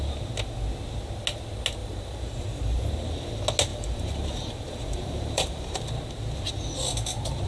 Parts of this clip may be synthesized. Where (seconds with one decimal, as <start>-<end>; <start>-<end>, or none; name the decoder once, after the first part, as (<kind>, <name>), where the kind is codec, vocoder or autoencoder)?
1.8-2.8 (vocoder, BigVGAN v2); 3.7-5.9